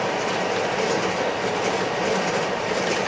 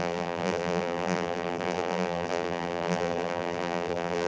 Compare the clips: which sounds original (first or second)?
first